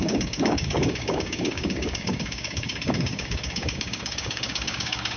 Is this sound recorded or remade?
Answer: remade